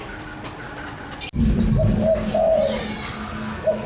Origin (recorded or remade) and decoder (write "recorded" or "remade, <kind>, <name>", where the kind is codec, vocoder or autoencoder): recorded